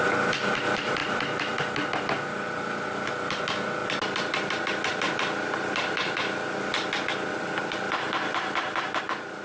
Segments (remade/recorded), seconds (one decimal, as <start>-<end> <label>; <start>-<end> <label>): 0.0-9.4 recorded